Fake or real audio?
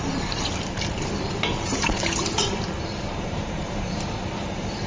fake